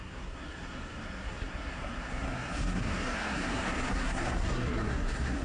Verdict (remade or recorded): remade